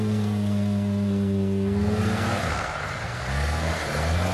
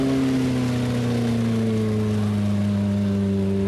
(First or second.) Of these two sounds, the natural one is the second